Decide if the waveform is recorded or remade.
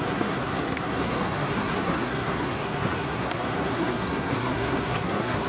remade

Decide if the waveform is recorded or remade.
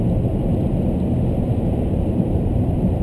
recorded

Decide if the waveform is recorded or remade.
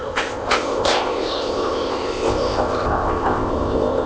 remade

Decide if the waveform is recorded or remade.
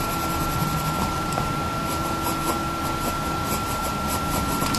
recorded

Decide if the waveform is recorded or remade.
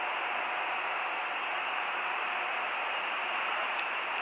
remade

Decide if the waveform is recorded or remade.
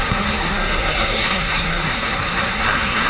remade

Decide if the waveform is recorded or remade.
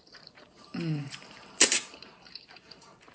remade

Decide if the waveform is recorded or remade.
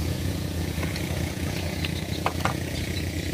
remade